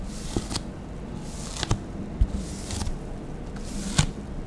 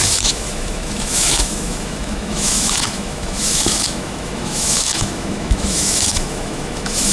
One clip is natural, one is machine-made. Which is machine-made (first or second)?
second